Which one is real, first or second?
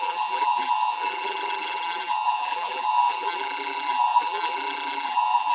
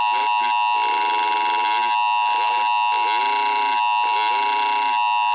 second